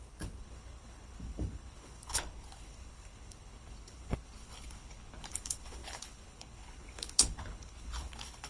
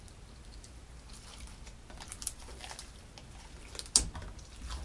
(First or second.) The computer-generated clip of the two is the first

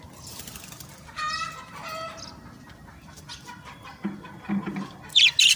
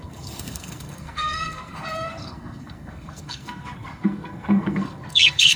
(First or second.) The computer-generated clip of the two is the second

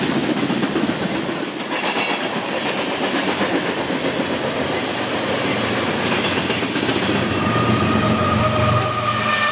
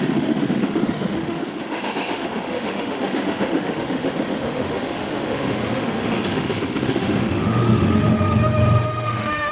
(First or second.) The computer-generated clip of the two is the second